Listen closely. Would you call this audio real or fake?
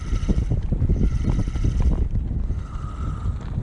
real